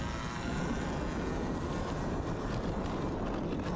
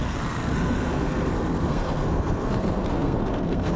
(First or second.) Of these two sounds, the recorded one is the first